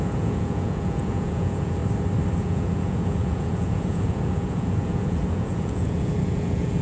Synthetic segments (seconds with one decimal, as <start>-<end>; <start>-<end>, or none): 0.0-1.8; 2.4-6.8